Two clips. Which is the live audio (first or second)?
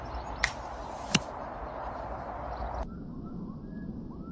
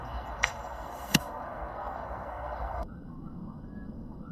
first